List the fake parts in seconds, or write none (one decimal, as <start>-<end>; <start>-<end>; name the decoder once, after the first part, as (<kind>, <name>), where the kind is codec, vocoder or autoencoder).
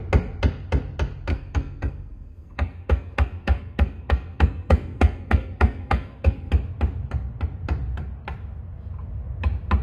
1.3-6.5 (codec, SNAC)